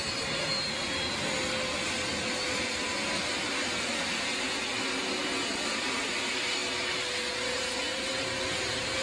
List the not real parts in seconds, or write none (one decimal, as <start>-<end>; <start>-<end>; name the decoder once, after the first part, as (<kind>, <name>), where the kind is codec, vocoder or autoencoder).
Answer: none